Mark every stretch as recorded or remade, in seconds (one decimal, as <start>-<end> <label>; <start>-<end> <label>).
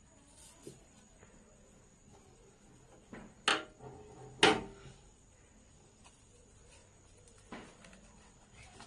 0.0-8.9 recorded